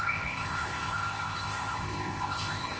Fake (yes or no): yes